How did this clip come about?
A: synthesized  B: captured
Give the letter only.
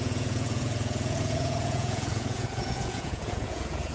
A